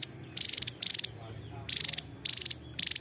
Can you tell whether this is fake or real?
real